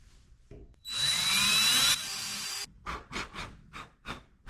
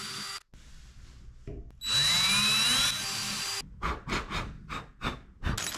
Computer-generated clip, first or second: first